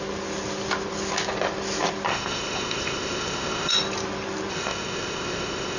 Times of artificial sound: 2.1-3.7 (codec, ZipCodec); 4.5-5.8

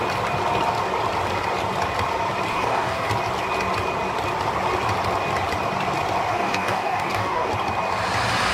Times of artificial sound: 2.5-3.1 (codec, DAC); 6.3-7.5

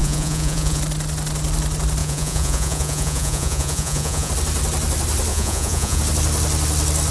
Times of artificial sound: 0.0-0.8 (vocoder, Vocos); 2.0-4.3; 5.3-6.0

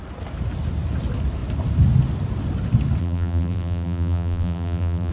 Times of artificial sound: 3.0-5.1 (vocoder, BigVGAN v2)

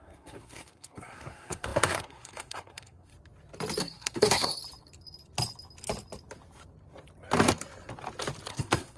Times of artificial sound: 0.0-3.1 (codec, SNAC); 3.8-4.6; 8.5-9.0

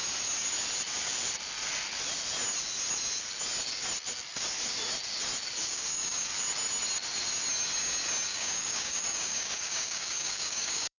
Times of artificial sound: 5.6-6.3 (codec, DAC); 8.3-11.0